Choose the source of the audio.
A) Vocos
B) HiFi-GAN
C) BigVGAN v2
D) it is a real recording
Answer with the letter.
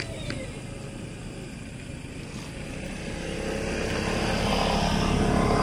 D